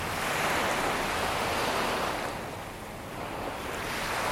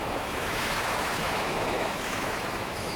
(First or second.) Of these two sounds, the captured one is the first